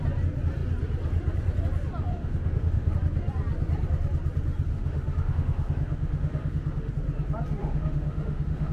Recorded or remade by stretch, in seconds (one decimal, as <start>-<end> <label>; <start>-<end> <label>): 0.0-2.1 recorded; 2.1-2.9 remade; 2.9-4.7 recorded; 4.7-6.9 remade; 6.9-7.6 recorded; 7.6-8.7 remade